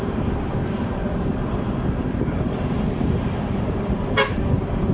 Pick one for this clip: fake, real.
fake